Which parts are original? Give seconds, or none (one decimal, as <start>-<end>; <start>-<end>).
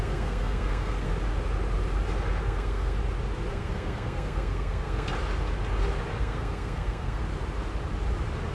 1.1-2.4; 3.0-3.5; 5.1-6.2; 7.2-8.5